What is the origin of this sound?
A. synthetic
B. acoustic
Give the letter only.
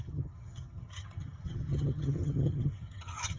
A